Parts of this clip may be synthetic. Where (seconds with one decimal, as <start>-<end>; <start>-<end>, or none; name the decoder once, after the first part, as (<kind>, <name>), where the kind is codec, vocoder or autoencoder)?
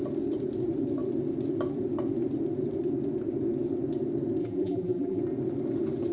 4.4-5.2 (vocoder, BigVGAN v2)